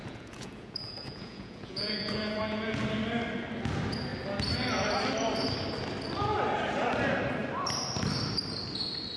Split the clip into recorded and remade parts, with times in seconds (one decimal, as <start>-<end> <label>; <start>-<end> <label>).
0.0-2.8 remade; 2.8-9.2 recorded